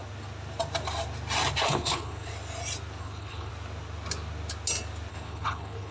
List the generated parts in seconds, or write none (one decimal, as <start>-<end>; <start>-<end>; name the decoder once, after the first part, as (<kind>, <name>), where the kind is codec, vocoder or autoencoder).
1.7-2.3 (codec, HILCodec); 3.0-3.5; 5.1-5.9